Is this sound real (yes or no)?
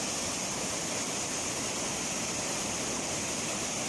yes